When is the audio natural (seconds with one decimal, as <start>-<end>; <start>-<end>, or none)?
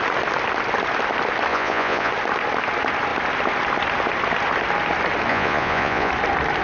0.0-1.5; 2.1-5.3; 6.1-6.6